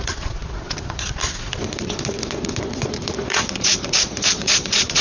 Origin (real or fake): fake